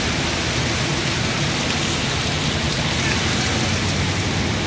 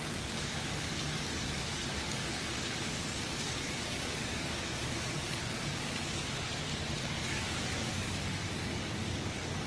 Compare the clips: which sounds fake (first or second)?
second